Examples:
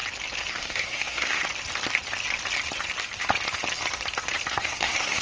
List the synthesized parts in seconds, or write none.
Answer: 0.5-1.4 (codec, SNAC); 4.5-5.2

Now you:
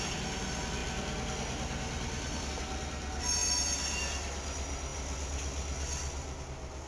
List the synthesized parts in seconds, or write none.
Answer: none

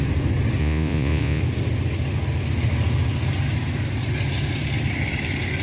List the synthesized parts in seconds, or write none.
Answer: 0.6-1.4 (vocoder, Vocos)

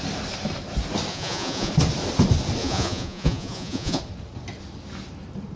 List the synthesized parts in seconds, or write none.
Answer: 1.1-1.7 (vocoder, Vocos); 2.6-4.0

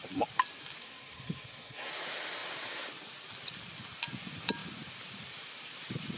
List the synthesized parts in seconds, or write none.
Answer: 0.8-1.9 (codec, SNAC)